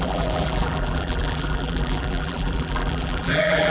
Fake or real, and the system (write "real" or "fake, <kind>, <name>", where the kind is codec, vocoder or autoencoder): fake, vocoder, BigVGAN v2